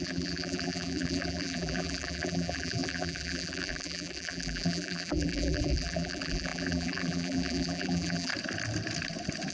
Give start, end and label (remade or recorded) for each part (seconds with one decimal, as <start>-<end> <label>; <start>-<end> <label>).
0.0-8.3 remade; 8.3-9.5 recorded